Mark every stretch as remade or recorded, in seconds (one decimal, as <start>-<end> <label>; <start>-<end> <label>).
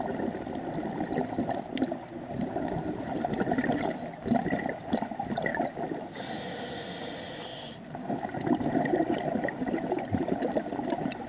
0.0-11.3 recorded